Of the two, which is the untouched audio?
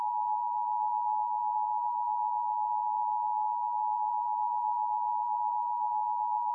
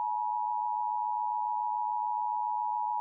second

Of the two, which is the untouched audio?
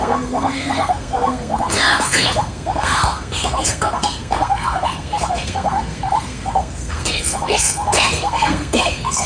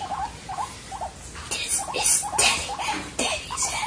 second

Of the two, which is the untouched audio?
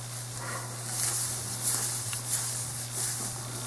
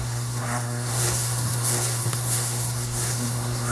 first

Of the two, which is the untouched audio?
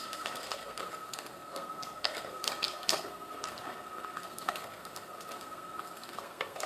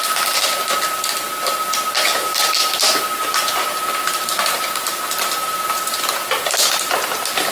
second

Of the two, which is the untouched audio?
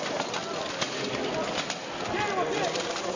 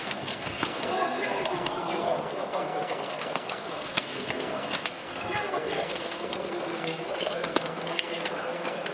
first